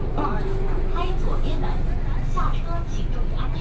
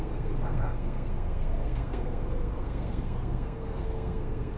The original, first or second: first